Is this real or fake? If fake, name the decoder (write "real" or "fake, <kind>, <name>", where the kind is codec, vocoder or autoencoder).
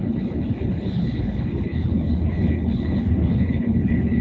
fake, codec, HILCodec